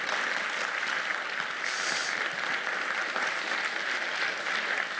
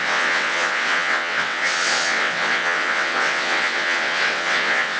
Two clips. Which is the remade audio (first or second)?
second